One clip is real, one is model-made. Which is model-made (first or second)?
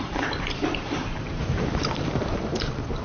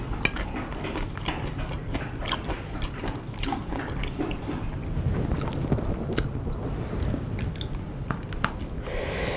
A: first